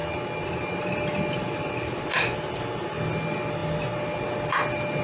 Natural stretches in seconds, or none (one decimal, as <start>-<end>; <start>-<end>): 0.0-5.0